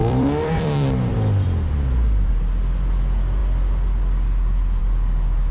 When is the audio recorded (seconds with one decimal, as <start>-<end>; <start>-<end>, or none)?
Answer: 2.3-5.5